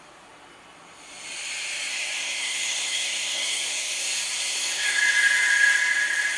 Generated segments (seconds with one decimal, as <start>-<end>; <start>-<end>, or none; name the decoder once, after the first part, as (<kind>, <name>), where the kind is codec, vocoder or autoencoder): 1.9-5.0 (codec, SNAC)